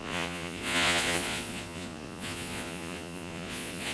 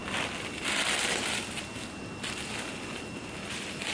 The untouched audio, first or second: second